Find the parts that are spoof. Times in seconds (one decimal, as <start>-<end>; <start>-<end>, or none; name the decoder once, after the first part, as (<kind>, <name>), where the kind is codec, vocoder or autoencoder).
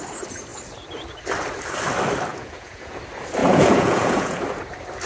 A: 2.3-3.0 (vocoder, Vocos); 3.4-4.4